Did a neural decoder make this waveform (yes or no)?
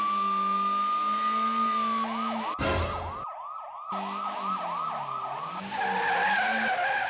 no